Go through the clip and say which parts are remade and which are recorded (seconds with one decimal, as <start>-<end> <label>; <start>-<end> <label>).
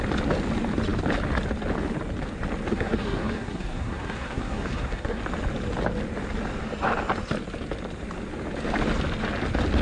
0.0-2.7 recorded; 2.7-5.2 remade; 5.2-9.8 recorded